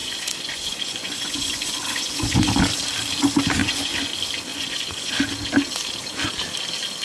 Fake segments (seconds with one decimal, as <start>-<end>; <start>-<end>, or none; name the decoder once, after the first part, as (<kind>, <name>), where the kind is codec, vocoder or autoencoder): 0.0-2.5 (vocoder, Vocos); 3.6-4.1; 4.5-5.1